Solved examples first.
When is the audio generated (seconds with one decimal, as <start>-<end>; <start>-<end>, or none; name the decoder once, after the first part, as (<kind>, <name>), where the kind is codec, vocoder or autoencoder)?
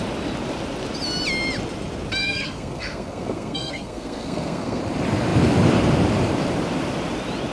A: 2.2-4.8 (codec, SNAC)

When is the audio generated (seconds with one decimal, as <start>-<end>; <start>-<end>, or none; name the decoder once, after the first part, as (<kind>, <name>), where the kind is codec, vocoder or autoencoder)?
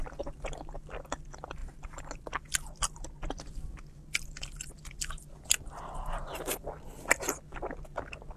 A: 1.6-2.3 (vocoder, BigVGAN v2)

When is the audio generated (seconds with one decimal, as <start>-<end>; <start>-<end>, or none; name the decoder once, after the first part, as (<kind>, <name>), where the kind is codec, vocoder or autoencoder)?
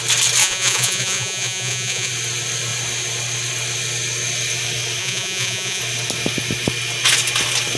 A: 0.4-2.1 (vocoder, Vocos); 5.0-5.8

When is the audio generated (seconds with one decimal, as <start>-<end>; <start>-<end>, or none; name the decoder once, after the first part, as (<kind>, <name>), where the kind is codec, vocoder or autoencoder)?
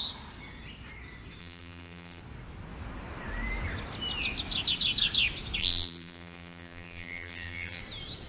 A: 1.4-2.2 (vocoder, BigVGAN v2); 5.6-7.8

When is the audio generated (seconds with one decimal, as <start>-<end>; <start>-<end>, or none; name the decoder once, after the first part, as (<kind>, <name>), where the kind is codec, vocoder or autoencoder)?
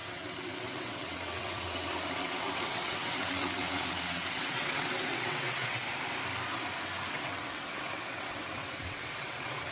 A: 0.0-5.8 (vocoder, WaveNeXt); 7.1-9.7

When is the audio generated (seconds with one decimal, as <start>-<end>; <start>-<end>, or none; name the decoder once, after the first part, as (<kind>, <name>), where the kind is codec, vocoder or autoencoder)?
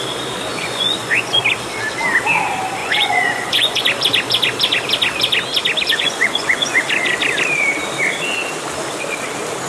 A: 0.5-1.4 (vocoder, Vocos); 2.8-3.8; 5.9-6.9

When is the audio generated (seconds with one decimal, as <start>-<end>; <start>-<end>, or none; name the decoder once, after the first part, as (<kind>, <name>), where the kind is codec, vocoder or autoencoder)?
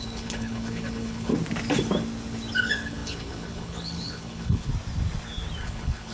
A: 0.0-1.3 (codec, HILCodec); 2.6-4.7; 5.6-6.1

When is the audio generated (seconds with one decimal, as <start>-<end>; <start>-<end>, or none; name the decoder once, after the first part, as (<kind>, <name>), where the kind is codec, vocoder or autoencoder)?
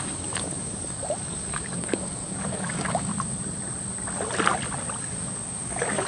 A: 0.0-3.1 (codec, DAC); 5.0-6.1